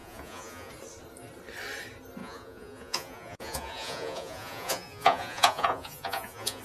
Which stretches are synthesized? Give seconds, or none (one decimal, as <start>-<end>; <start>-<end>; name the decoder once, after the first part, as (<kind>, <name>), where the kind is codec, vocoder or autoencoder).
0.0-0.7 (vocoder, Vocos); 2.2-6.6

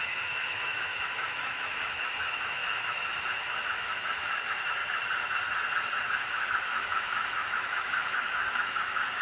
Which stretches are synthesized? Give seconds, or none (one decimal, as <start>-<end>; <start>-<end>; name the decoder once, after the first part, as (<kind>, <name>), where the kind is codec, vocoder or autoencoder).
0.0-4.8 (autoencoder, DAC-VAE); 6.1-9.2

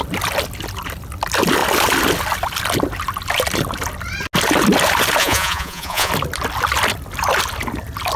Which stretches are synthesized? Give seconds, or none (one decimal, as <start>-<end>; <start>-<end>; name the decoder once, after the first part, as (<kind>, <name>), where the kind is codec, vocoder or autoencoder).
5.2-6.1 (vocoder, Vocos)

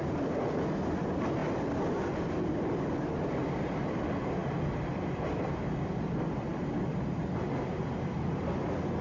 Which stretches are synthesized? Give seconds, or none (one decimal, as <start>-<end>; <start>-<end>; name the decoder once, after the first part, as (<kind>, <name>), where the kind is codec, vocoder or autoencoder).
0.0-1.4 (vocoder, BigVGAN v2); 3.3-6.5; 7.8-9.0

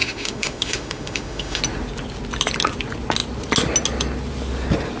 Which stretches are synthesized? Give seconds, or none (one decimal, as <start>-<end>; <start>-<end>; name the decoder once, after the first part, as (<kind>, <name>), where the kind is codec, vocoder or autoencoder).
0.0-1.6 (autoencoder, DAC-VAE)

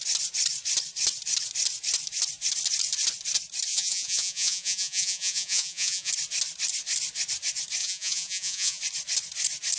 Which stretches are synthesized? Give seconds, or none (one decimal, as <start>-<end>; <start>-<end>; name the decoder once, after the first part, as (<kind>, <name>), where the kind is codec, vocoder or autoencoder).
3.7-6.1 (vocoder, Vocos); 7.8-8.8

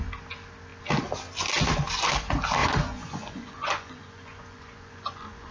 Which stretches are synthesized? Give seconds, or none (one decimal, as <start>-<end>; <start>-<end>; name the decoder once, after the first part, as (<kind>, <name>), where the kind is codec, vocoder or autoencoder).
2.6-5.5 (vocoder, Vocos)

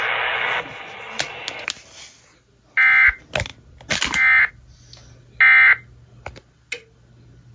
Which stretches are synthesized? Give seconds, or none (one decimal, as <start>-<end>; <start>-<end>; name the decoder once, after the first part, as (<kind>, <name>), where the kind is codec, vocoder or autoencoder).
none